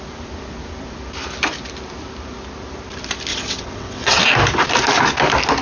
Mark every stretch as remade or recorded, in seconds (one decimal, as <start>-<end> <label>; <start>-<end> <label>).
0.0-3.3 recorded; 3.3-4.2 remade; 4.2-5.6 recorded

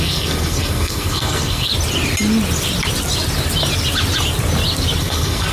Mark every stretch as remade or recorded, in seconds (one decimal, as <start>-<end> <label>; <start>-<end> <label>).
0.0-1.7 remade; 1.7-5.0 recorded; 5.0-5.5 remade